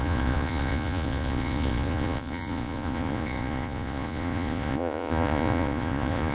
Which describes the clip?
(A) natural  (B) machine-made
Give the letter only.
B